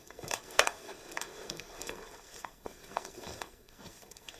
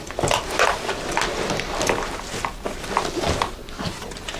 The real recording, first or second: second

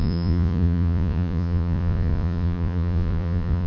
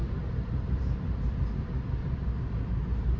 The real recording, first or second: second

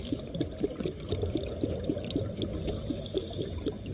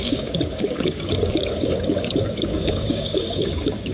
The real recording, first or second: first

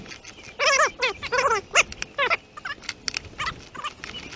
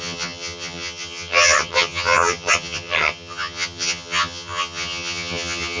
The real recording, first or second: first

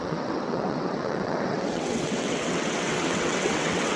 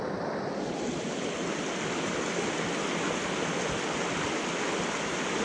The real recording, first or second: second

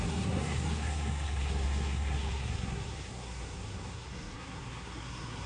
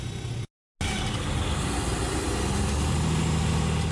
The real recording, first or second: second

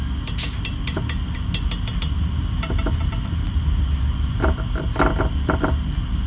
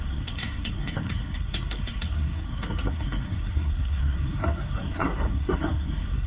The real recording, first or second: first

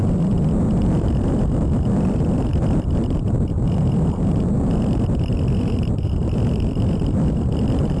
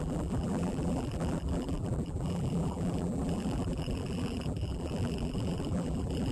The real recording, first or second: first